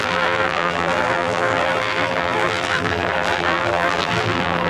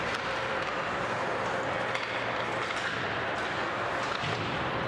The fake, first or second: first